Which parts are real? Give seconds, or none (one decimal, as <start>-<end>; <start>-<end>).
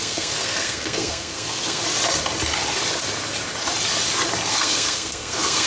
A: 1.8-4.5